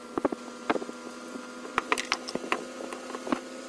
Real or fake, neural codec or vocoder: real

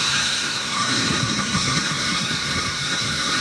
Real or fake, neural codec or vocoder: fake, codec, SNAC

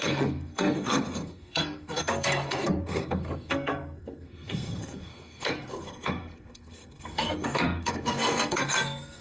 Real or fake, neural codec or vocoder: fake, codec, SNAC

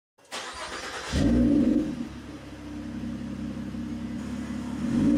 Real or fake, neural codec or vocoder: real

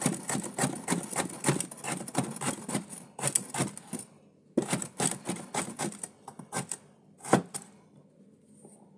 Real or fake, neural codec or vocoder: real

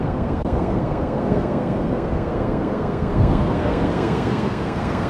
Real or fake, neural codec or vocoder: fake, codec, SNAC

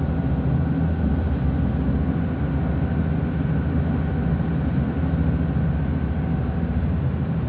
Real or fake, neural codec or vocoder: real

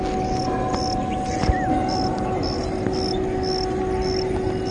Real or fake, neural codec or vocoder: real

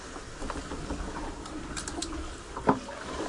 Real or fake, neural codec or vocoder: real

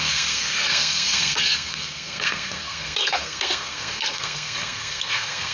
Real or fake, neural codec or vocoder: fake, codec, SNAC